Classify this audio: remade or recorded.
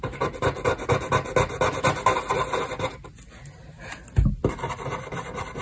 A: recorded